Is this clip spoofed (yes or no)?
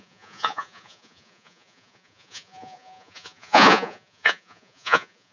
yes